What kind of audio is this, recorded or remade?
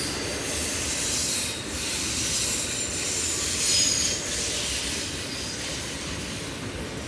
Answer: recorded